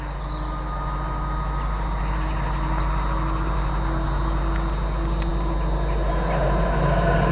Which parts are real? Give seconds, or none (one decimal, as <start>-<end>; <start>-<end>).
0.0-7.3